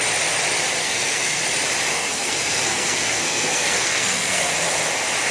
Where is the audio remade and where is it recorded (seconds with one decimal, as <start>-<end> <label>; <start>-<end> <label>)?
0.0-0.8 recorded; 0.8-1.4 remade; 1.4-1.9 recorded; 1.9-4.5 remade; 4.5-5.3 recorded